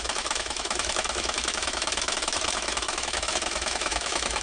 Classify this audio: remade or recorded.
remade